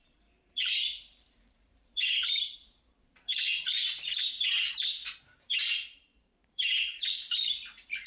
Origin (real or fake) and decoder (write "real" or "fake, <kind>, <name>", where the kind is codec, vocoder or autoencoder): fake, vocoder, BigVGAN v2